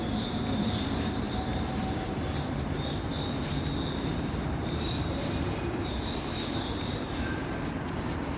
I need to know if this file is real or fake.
fake